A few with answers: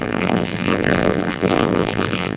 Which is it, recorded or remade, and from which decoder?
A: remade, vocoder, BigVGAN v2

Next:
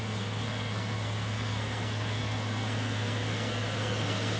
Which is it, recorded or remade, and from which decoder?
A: remade, codec, SNAC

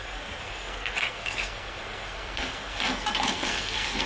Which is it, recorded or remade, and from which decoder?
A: remade, codec, SNAC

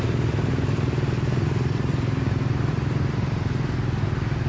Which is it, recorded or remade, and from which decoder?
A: recorded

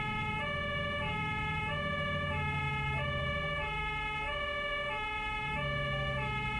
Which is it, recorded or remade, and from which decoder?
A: remade, autoencoder, DAC-VAE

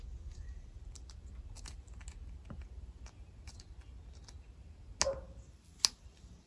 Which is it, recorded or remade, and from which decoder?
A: recorded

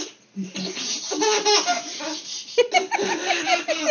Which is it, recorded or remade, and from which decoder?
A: recorded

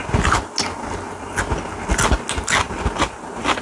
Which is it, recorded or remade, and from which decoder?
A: recorded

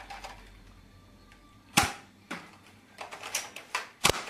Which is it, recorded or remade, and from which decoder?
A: remade, vocoder, BigVGAN v2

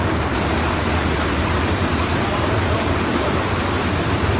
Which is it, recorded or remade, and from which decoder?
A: remade, vocoder, BigVGAN v2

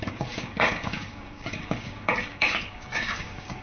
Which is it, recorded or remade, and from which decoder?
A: remade, codec, DAC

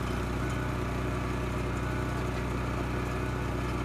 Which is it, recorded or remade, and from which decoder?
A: recorded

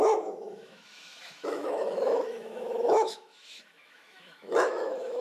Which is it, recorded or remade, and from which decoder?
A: remade, autoencoder, DAC-VAE